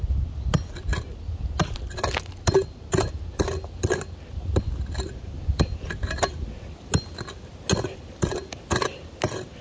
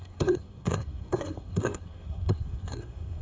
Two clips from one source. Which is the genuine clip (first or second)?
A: first